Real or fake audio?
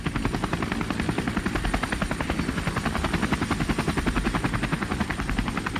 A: fake